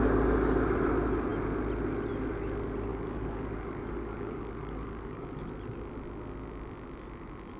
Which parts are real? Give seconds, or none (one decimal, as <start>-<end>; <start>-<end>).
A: 0.0-2.9; 5.4-7.6

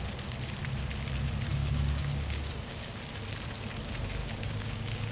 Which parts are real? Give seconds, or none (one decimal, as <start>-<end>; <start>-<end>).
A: 0.0-1.6; 3.0-4.2

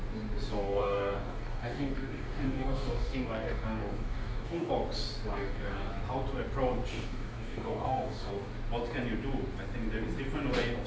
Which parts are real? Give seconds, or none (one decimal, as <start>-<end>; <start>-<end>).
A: 0.0-0.5; 4.7-5.3; 5.9-6.9; 8.3-10.9